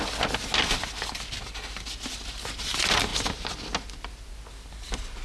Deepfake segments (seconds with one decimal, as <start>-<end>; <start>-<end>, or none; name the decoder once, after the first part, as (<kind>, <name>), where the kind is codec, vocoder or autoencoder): none